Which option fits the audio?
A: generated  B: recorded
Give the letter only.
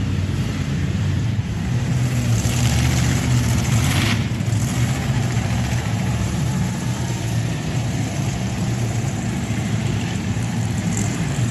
A